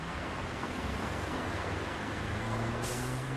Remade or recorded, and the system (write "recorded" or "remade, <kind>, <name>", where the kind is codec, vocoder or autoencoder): remade, codec, SNAC